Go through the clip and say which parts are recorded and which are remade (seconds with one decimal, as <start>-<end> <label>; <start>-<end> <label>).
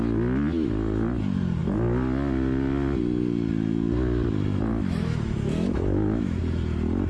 0.0-4.7 recorded; 4.7-6.4 remade; 6.4-7.1 recorded